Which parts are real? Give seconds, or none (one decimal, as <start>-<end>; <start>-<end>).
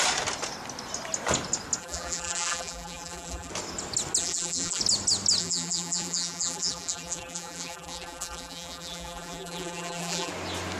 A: 0.0-1.8; 3.5-4.2; 4.8-5.4; 10.3-10.8